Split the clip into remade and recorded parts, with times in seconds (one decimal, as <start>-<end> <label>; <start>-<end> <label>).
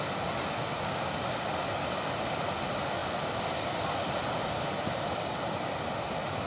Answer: 0.0-6.5 recorded